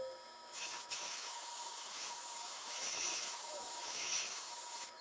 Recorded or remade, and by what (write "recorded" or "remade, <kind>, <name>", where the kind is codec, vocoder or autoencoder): remade, autoencoder, DAC-VAE